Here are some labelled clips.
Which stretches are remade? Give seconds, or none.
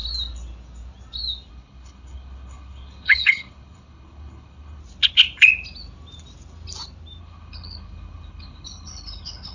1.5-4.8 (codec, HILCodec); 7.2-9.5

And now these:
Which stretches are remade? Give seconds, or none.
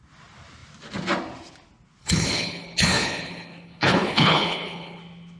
2.0-5.0 (codec, HILCodec)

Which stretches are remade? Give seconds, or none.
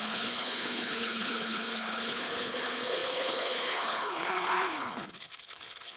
0.0-6.0 (codec, HILCodec)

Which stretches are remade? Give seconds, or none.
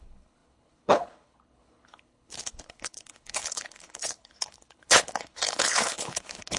0.0-6.6 (codec, HILCodec)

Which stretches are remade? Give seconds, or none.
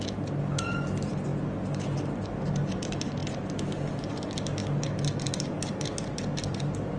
none